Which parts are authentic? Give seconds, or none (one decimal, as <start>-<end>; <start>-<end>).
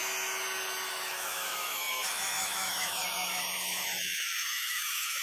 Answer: 0.0-0.9